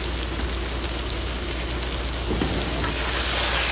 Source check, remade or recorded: recorded